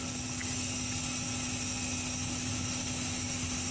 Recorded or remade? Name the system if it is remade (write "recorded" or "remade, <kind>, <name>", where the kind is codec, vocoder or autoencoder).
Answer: recorded